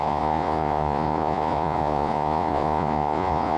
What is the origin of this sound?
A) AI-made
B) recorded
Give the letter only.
A